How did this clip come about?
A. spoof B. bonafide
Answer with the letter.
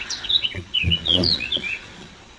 A